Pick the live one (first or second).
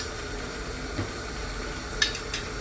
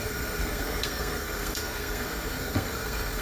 first